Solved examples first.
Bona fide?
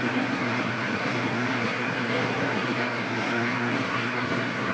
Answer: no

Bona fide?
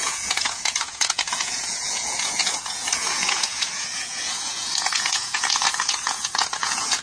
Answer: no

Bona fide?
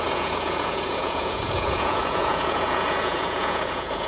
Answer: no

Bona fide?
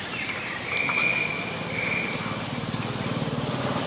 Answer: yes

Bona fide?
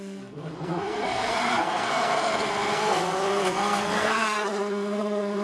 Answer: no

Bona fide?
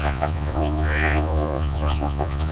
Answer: no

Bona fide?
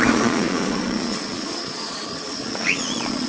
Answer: no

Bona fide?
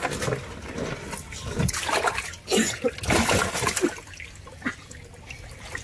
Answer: yes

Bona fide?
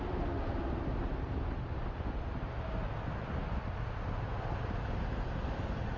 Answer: yes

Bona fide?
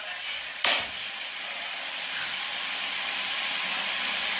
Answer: yes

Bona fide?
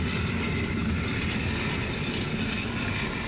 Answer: yes